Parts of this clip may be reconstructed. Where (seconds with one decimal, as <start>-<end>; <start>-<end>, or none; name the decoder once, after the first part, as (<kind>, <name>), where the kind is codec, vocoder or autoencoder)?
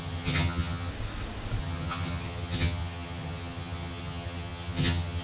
0.0-0.9 (vocoder, HiFi-GAN); 1.6-5.2